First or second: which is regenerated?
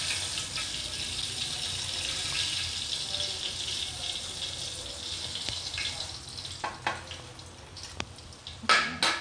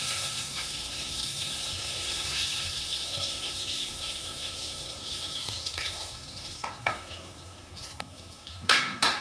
second